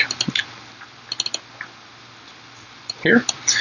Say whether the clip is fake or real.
real